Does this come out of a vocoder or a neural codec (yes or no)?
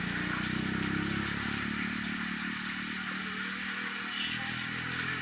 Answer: no